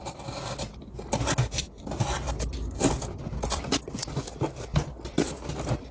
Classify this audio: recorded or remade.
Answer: recorded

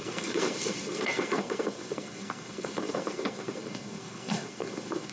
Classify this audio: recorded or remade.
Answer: remade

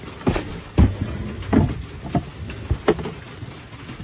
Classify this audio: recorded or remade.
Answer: recorded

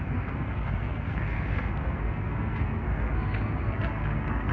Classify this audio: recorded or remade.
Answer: remade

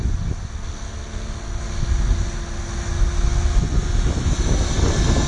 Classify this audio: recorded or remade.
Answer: recorded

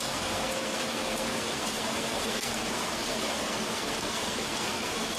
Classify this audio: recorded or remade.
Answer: remade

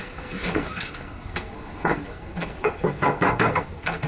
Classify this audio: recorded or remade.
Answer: remade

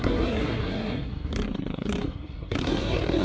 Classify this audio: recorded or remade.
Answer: remade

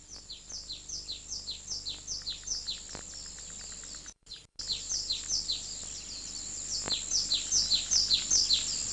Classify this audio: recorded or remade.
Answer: recorded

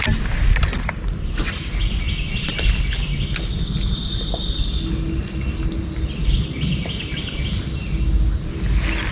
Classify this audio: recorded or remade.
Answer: recorded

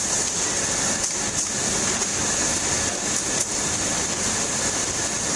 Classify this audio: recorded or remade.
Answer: recorded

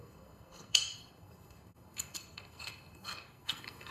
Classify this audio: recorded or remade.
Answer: remade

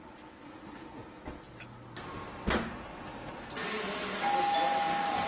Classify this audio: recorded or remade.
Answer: recorded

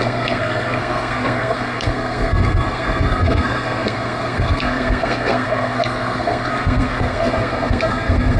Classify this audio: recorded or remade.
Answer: remade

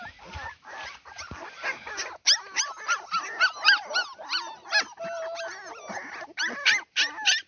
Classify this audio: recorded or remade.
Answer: recorded